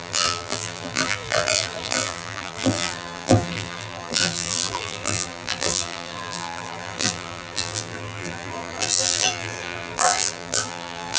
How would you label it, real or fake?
fake